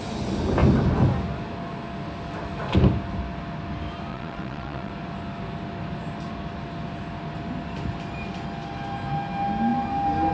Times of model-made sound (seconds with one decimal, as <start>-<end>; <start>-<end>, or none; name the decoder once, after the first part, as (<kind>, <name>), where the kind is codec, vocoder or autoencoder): 4.1-4.9 (vocoder, WaveNeXt)